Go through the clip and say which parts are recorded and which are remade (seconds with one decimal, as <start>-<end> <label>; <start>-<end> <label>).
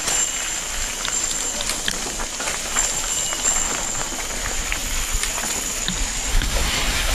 0.0-6.3 recorded; 6.3-7.1 remade